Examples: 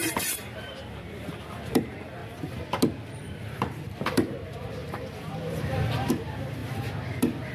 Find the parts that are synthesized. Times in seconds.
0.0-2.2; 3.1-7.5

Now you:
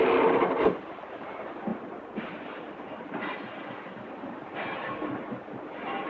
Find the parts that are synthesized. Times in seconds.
none

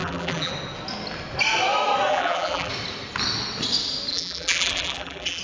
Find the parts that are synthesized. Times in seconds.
0.0-0.5; 2.1-2.7; 4.1-5.4

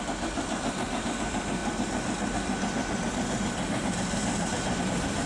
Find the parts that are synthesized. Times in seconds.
0.0-1.6; 4.8-5.3

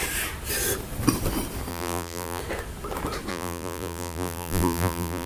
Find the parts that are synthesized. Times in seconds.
1.7-2.4; 3.3-5.3

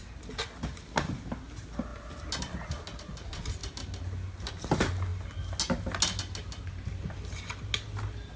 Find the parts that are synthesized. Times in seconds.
none